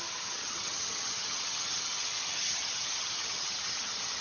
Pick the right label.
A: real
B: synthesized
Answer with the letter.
B